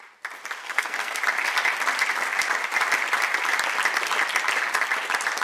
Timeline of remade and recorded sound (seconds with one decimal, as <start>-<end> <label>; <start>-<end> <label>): 0.0-0.6 recorded; 0.6-1.2 remade; 1.2-5.4 recorded